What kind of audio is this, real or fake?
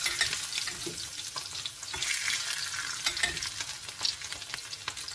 real